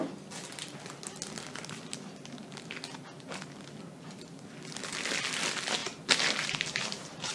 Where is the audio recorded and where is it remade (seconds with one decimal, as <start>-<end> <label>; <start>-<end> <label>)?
0.0-5.8 recorded; 5.8-7.3 remade

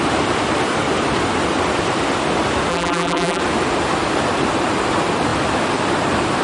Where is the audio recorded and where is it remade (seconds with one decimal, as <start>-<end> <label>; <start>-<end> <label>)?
0.0-2.7 recorded; 2.7-3.4 remade; 3.4-6.4 recorded

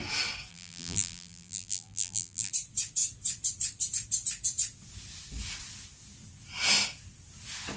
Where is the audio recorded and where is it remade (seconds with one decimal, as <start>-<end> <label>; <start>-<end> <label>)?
0.0-0.5 recorded; 0.5-2.5 remade; 2.5-7.8 recorded

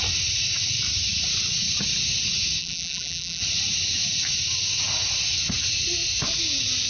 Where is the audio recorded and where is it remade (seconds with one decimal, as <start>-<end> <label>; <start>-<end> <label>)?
0.0-2.6 recorded; 2.6-3.4 remade; 3.4-6.9 recorded